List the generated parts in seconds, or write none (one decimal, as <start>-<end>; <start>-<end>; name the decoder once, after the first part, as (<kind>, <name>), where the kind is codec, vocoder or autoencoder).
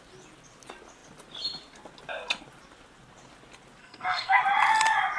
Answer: 3.8-4.4 (codec, SNAC)